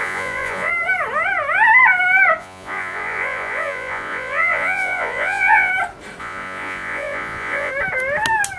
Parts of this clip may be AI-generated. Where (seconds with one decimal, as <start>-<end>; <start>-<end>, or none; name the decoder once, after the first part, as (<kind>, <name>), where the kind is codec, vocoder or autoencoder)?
0.0-0.7 (vocoder, Vocos); 2.4-5.7; 6.2-7.7